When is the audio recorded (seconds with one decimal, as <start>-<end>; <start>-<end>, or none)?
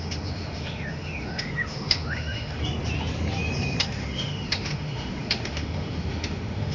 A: 2.6-3.8